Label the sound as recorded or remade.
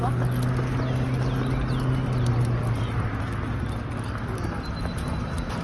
recorded